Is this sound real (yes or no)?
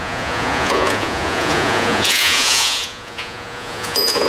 no